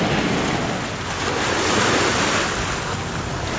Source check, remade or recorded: recorded